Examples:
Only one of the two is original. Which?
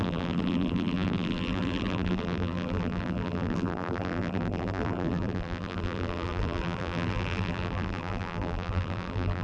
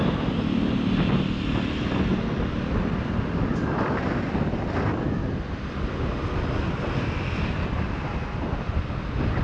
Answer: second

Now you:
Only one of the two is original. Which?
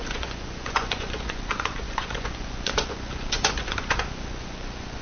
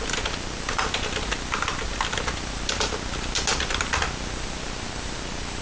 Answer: second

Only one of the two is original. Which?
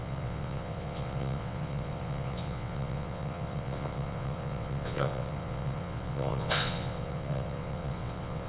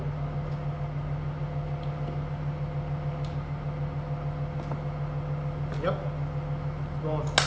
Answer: second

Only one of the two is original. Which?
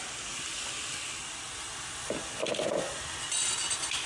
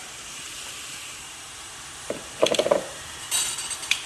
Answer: first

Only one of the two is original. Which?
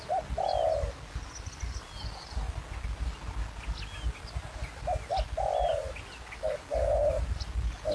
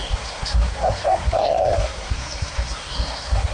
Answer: first